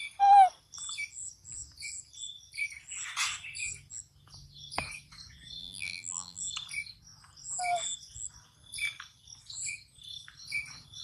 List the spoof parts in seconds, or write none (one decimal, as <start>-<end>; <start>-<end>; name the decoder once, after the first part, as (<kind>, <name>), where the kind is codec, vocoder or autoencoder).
5.6-6.4 (vocoder, BigVGAN v2)